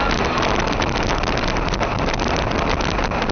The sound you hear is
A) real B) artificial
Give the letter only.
A